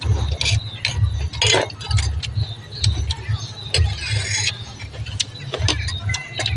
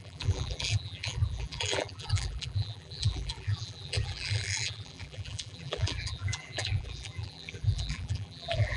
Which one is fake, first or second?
second